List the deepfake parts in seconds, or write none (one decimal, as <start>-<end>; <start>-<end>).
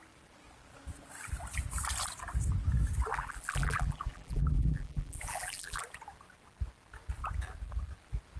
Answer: 3.1-5.8